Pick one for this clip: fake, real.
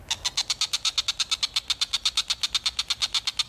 real